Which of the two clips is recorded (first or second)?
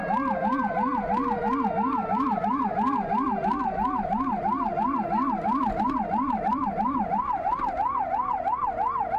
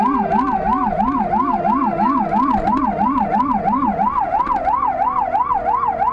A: second